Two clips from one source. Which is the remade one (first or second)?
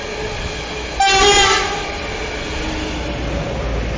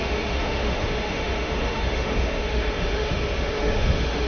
second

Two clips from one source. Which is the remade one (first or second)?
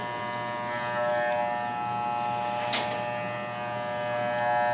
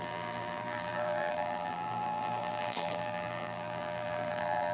second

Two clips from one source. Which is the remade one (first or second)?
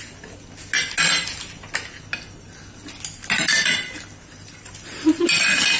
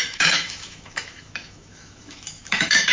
second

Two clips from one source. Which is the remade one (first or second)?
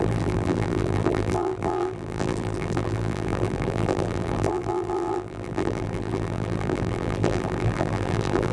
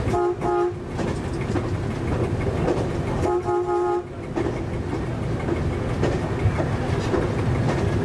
first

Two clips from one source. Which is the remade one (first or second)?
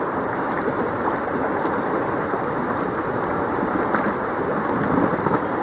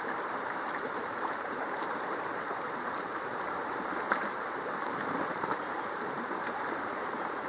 second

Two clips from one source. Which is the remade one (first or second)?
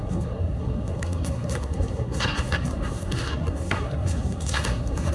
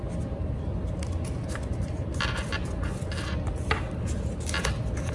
first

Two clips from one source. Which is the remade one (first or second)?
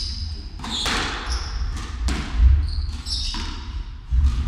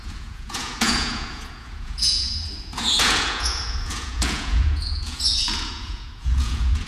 second